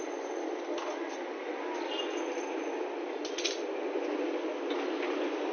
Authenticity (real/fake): real